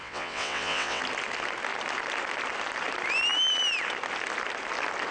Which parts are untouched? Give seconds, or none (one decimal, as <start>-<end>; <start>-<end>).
1.0-5.1

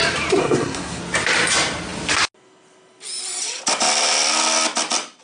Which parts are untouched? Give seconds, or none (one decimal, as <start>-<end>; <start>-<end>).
0.0-0.4; 1.0-5.2